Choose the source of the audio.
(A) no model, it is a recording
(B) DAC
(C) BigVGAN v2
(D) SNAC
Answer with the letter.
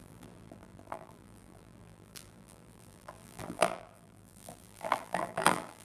C